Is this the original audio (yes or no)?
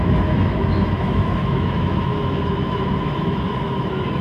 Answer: no